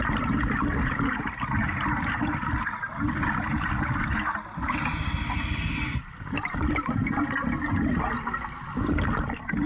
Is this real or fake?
real